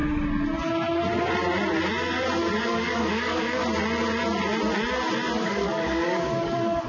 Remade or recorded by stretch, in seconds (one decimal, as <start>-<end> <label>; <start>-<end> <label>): 0.0-2.6 recorded; 2.6-3.6 remade; 3.6-5.4 recorded; 5.4-6.9 remade